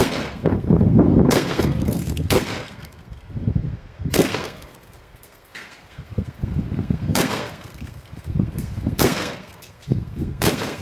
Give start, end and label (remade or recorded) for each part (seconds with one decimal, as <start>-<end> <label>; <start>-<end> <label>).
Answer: 0.0-10.8 remade

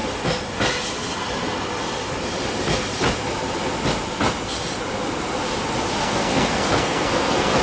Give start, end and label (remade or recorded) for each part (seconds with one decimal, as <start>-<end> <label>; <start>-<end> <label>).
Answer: 0.0-6.0 recorded; 6.0-7.6 remade

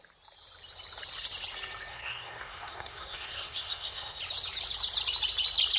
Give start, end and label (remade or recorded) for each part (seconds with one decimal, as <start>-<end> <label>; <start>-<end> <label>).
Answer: 0.0-1.9 recorded; 1.9-4.2 remade; 4.2-5.8 recorded

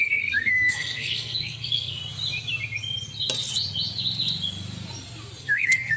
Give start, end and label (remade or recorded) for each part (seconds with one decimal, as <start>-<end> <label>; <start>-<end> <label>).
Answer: 0.0-2.0 remade; 2.0-5.4 recorded; 5.4-6.0 remade

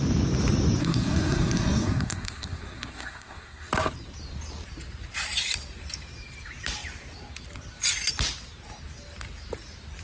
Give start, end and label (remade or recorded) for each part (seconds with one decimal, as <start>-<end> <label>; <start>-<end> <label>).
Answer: 0.0-0.8 recorded; 0.8-3.7 remade; 3.7-10.0 recorded

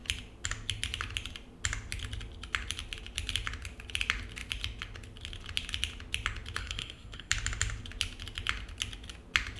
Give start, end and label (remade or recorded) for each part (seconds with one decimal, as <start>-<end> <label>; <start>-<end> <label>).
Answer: 0.0-6.6 recorded; 6.6-7.3 remade; 7.3-9.6 recorded